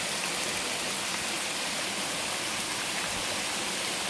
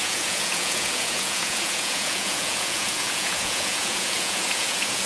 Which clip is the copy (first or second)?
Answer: second